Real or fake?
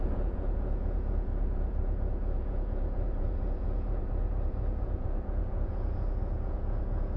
fake